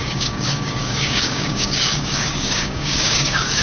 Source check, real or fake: fake